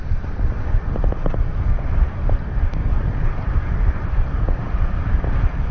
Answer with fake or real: real